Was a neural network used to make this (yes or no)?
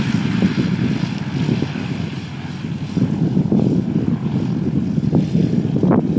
no